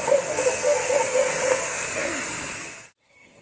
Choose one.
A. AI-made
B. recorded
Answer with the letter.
A